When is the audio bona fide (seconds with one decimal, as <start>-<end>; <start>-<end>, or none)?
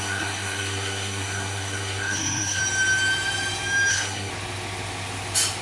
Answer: 2.6-3.9; 4.3-5.6